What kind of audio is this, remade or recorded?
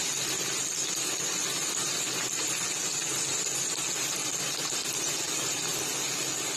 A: recorded